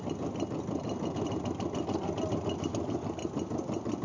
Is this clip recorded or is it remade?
recorded